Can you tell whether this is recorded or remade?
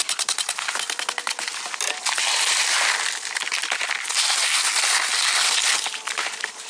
recorded